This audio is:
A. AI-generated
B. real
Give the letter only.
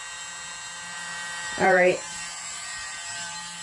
A